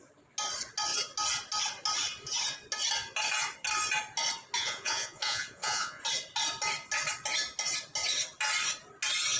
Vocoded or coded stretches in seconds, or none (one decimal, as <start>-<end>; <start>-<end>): 4.6-6.0